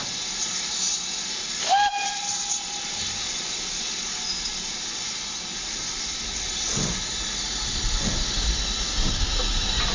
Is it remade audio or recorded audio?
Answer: recorded